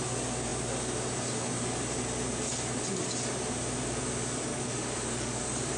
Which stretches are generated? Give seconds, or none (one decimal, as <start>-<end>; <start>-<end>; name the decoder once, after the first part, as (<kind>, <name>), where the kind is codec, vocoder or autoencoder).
4.5-5.8 (codec, DAC)